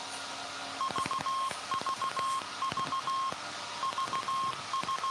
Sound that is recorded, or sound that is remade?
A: recorded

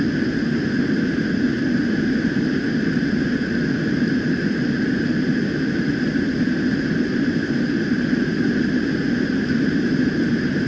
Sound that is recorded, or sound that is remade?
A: recorded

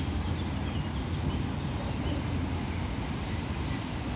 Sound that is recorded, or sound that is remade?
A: recorded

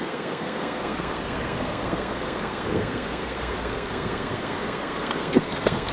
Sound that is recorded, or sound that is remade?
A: remade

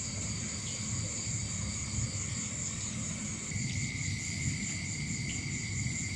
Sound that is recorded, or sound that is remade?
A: recorded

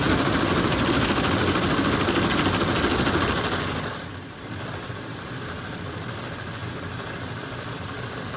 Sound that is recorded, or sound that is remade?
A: recorded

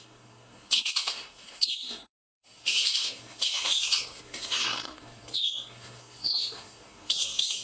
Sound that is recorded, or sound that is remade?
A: remade